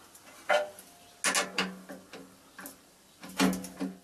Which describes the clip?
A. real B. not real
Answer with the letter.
A